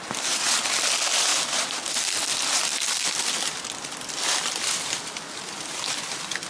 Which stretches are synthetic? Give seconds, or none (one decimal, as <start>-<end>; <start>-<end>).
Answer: 2.7-6.1